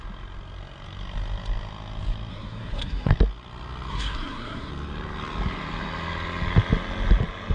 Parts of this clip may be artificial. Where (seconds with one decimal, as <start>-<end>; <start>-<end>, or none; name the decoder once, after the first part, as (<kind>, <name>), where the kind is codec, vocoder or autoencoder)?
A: 2.3-3.1 (codec, SNAC); 3.9-4.7